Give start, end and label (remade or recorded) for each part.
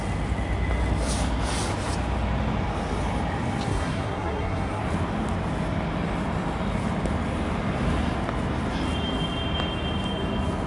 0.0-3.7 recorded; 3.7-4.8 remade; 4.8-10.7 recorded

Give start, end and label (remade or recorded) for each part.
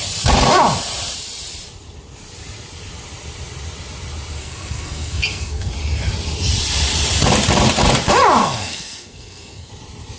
0.0-4.4 recorded; 4.4-5.7 remade; 5.7-8.4 recorded; 8.4-9.7 remade; 9.7-10.2 recorded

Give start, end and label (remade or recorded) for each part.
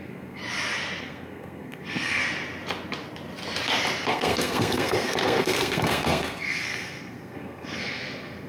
0.0-0.4 remade; 0.4-1.0 recorded; 1.0-2.2 remade; 2.2-4.1 recorded; 4.1-8.5 remade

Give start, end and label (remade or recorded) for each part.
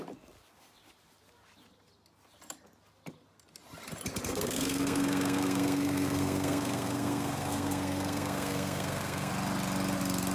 0.0-4.3 recorded; 4.3-9.3 remade; 9.3-10.3 recorded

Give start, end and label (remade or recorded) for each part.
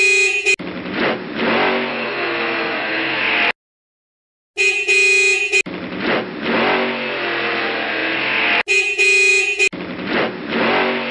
0.0-1.9 recorded; 1.9-3.2 remade; 3.2-11.1 recorded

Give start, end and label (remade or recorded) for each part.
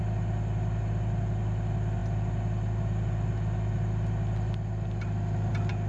0.0-5.9 recorded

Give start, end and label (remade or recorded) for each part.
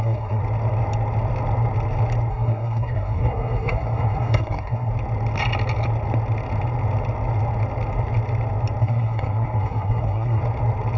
0.0-0.4 remade; 0.4-2.3 recorded; 2.3-4.9 remade; 4.9-8.8 recorded; 8.8-10.4 remade; 10.4-11.0 recorded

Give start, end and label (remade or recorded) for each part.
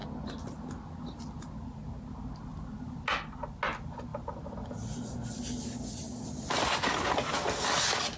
0.0-8.2 recorded